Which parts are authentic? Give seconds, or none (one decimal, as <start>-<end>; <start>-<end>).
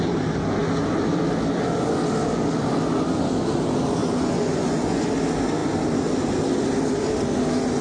0.0-4.0; 5.1-7.8